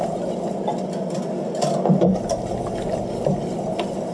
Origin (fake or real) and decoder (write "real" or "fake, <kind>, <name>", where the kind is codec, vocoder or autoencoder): real